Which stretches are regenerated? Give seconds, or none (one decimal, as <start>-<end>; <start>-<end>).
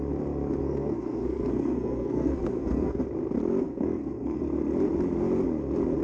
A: 0.6-3.0; 3.6-4.4